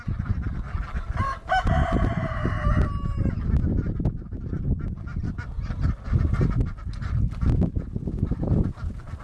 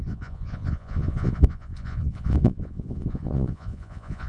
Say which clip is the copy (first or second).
second